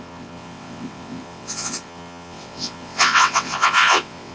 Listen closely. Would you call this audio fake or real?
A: fake